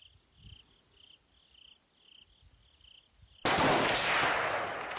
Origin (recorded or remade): recorded